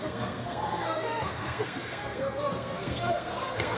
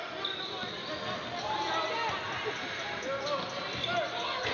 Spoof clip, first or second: first